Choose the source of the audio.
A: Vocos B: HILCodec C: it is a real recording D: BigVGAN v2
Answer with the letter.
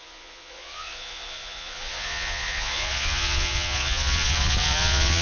A